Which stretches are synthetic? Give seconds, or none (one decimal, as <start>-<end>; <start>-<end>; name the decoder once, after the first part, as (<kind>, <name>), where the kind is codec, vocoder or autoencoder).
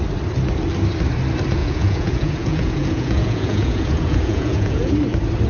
1.6-4.9 (vocoder, Vocos)